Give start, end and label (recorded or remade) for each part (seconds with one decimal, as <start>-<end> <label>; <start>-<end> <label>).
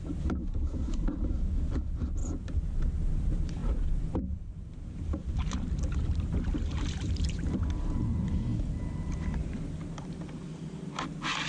0.0-2.2 remade; 2.2-3.1 recorded; 3.1-8.5 remade; 8.5-11.5 recorded